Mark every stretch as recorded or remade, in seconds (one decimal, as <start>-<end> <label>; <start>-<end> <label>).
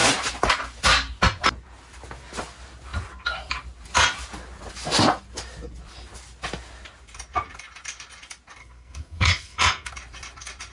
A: 0.0-8.6 recorded; 8.6-9.9 remade; 9.9-10.7 recorded